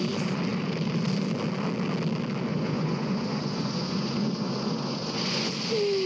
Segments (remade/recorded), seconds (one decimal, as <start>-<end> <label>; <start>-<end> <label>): 0.0-2.5 recorded; 2.5-5.5 remade; 5.5-6.1 recorded